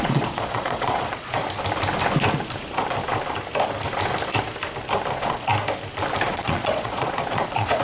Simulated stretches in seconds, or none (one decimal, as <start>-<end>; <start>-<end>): 0.0-1.4; 5.1-5.5; 6.3-7.8